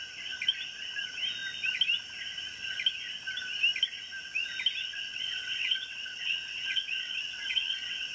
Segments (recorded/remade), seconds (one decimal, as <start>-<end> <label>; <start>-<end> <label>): 0.0-4.8 recorded; 4.8-8.1 remade